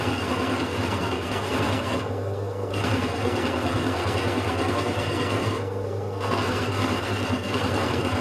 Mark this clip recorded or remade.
remade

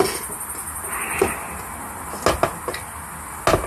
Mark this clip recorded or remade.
recorded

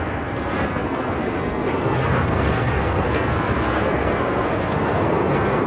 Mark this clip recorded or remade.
remade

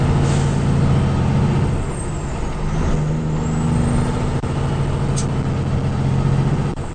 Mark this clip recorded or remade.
recorded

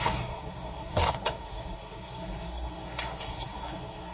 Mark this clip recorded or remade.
remade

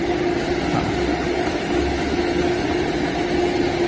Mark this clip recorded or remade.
recorded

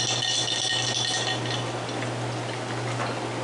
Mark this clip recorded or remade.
recorded